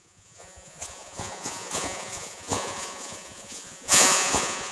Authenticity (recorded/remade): remade